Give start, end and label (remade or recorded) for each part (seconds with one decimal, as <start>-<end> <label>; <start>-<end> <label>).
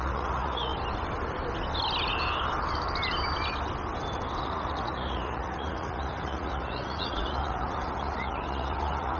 0.0-0.7 remade; 0.7-4.4 recorded; 4.4-9.2 remade